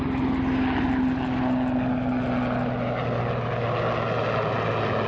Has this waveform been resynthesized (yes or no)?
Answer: no